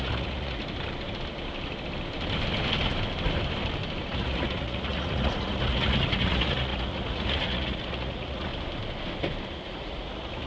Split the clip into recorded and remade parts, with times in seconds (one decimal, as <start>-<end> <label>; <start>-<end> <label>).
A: 0.0-0.6 remade; 0.6-4.1 recorded; 4.1-8.5 remade; 8.5-9.6 recorded; 9.6-10.5 remade